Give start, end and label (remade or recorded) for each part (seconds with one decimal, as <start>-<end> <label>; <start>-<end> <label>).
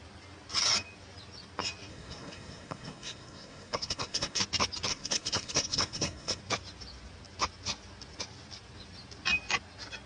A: 0.0-1.9 recorded; 1.9-4.4 remade; 4.4-4.9 recorded; 4.9-6.4 remade; 6.4-10.1 recorded